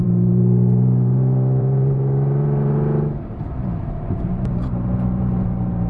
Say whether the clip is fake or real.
fake